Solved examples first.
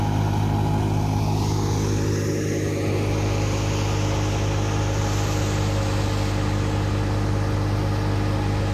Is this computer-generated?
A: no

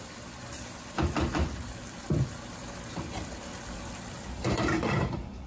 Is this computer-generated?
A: yes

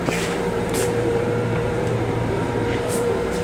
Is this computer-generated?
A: yes